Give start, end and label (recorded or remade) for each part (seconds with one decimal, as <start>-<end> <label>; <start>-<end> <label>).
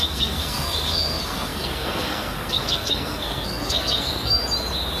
0.0-4.4 remade; 4.4-5.0 recorded